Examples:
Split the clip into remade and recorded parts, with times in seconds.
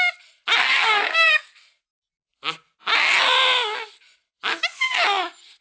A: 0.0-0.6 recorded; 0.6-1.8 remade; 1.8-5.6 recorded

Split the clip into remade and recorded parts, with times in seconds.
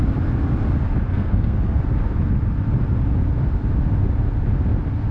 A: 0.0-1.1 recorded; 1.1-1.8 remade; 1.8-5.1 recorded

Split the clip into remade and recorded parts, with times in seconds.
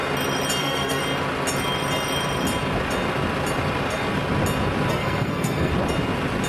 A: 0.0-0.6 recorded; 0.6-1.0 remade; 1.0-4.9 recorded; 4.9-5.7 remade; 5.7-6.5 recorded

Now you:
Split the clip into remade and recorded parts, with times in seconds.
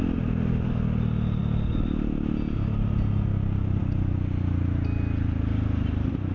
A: 0.0-6.3 recorded